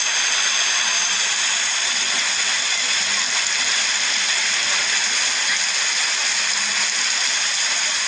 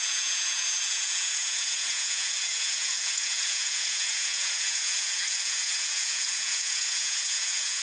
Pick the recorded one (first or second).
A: first